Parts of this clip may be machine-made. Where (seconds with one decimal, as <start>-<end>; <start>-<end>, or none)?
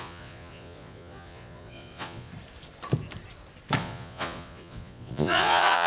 0.0-2.3; 3.8-5.9